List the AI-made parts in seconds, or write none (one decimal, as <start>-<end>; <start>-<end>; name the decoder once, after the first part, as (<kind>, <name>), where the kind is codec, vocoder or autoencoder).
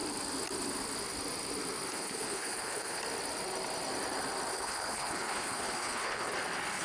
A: 1.9-3.0 (codec, HILCodec); 4.5-6.3